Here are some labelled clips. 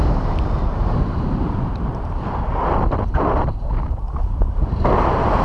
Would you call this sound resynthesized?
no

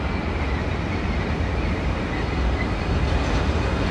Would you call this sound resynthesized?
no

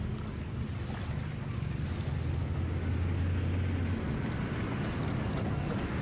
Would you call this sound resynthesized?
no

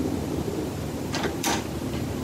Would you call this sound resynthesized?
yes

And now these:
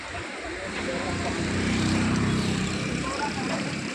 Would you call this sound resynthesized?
yes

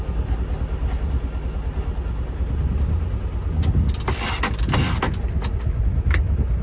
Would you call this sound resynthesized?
no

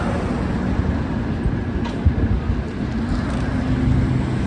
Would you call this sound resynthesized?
no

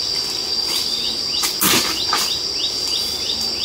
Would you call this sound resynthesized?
no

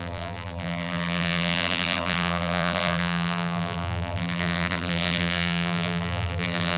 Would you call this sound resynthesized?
yes